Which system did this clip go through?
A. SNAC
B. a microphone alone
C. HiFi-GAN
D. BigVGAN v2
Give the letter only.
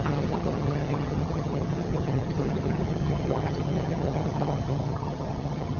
C